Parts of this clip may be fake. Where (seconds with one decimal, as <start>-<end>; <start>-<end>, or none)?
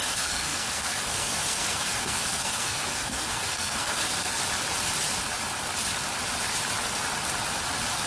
0.0-4.4